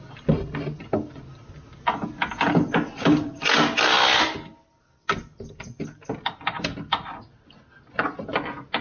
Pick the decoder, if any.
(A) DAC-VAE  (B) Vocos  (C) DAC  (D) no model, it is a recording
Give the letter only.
D